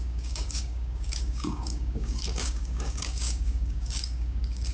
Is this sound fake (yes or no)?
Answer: yes